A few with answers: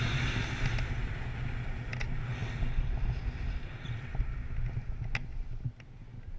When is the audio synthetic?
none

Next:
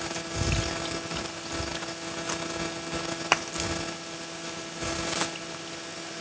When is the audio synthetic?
none

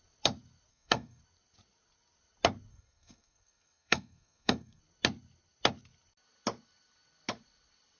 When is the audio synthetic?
0.7-1.2 (codec, SNAC); 2.7-4.8

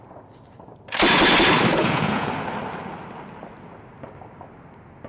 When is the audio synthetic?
1.7-2.3 (vocoder, Vocos)

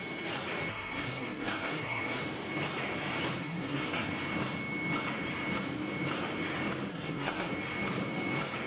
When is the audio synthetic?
0.7-2.2 (codec, SNAC); 3.4-4.1; 6.9-7.5

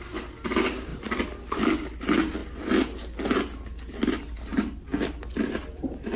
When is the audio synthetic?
0.9-1.4 (vocoder, BigVGAN v2); 4.5-5.7

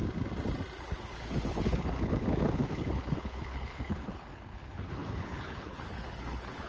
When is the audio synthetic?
0.8-6.7 (codec, HILCodec)

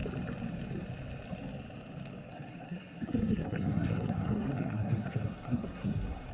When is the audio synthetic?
2.3-6.3 (codec, SNAC)